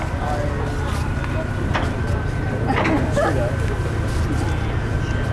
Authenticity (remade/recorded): recorded